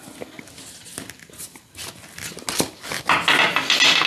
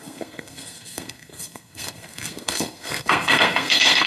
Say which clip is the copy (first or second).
second